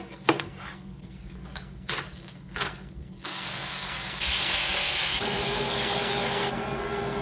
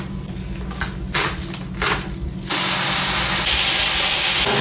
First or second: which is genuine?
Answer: second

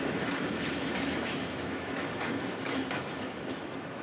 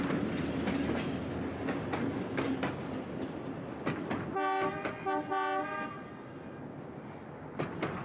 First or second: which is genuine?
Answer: second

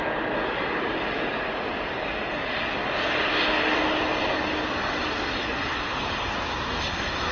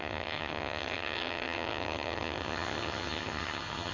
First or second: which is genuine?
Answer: first